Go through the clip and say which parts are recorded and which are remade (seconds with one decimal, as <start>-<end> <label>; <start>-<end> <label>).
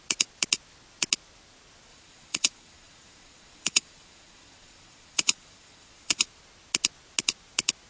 0.0-1.9 recorded; 1.9-6.3 remade; 6.3-7.9 recorded